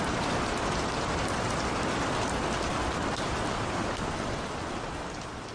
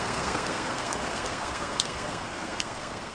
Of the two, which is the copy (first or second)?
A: second